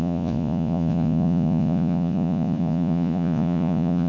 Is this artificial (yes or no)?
yes